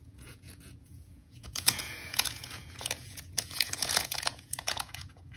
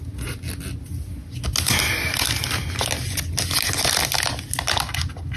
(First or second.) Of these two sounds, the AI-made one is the first